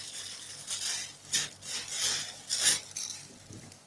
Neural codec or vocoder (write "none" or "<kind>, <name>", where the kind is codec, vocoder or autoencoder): none